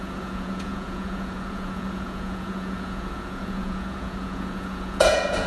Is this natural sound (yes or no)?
no